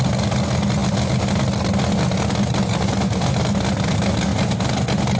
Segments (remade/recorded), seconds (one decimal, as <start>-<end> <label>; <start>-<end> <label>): 0.0-5.2 recorded